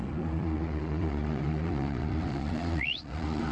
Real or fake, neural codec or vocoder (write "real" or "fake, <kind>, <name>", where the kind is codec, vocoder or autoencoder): fake, vocoder, Vocos